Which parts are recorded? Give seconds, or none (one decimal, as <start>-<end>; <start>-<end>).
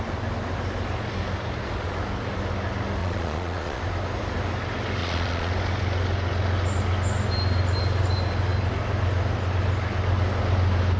0.0-3.0; 3.8-5.0; 5.5-11.0